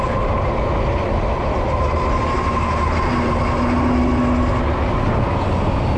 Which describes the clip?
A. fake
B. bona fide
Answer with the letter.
B